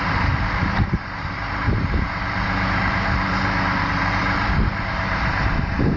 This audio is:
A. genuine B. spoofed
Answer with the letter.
B